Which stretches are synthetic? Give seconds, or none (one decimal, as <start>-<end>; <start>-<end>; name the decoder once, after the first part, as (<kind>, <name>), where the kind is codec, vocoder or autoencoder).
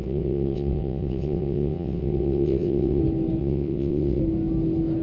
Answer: 0.0-3.0 (vocoder, WaveNeXt); 3.4-4.2